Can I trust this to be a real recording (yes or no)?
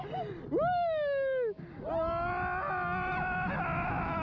yes